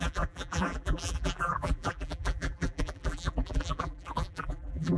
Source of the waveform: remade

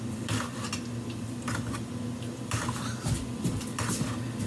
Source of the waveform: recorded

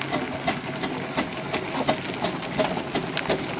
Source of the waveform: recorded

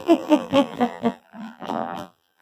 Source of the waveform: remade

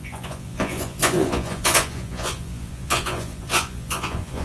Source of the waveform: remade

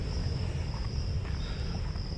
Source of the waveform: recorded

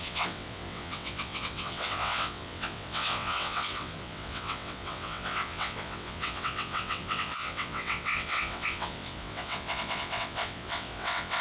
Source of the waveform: remade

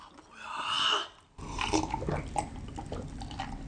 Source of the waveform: recorded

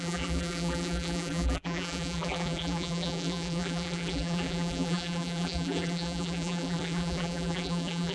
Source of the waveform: remade